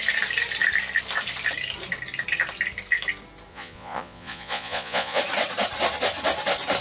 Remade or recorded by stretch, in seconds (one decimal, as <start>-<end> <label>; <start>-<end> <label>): 0.0-3.5 recorded; 3.5-5.2 remade; 5.2-6.8 recorded